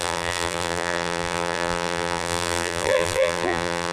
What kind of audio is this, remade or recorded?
remade